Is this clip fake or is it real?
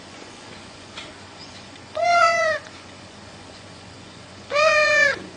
fake